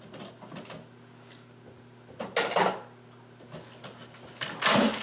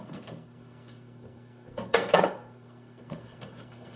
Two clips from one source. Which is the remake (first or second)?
second